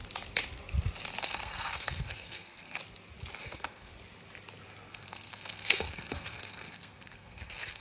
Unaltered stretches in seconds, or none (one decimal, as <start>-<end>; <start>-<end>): 0.0-1.2; 2.8-3.4; 3.9-4.9